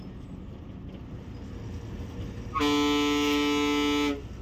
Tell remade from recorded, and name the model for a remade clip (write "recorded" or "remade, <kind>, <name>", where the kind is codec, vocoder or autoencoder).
recorded